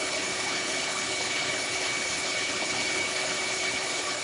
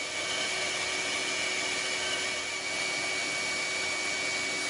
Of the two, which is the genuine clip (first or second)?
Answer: second